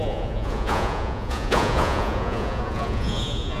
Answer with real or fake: fake